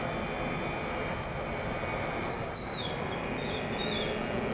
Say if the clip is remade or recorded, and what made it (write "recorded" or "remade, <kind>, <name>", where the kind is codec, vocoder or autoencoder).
recorded